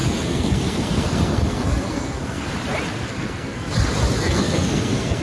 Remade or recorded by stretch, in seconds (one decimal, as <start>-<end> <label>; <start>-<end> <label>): 0.0-2.5 remade; 2.5-3.1 recorded; 3.1-3.7 remade; 3.7-4.2 recorded; 4.2-5.2 remade